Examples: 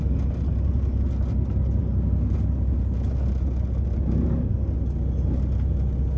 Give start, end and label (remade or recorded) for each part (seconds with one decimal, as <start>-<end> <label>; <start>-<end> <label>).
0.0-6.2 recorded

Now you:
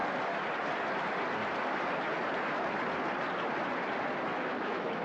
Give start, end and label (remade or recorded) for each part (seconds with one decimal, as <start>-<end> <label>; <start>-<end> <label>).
0.0-4.3 recorded; 4.3-5.0 remade

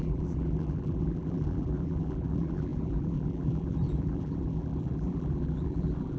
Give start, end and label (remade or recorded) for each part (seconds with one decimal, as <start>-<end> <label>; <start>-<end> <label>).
0.0-6.2 remade